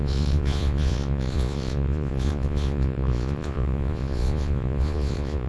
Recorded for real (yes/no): no